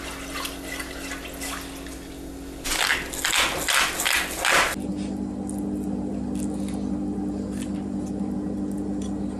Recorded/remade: recorded